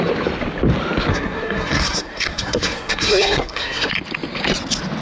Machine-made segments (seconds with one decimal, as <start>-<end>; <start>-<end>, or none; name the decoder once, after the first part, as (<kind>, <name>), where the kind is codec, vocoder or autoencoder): 1.1-3.9 (codec, SNAC)